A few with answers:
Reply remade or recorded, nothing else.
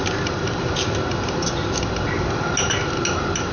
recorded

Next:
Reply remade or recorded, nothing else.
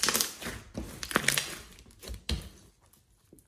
recorded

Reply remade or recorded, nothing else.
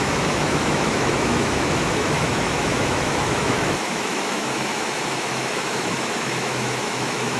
remade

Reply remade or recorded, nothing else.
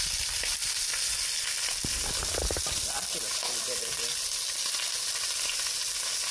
recorded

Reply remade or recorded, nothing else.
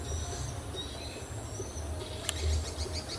recorded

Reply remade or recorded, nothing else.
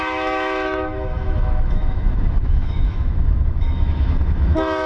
remade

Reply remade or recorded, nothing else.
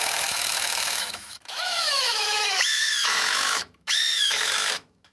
remade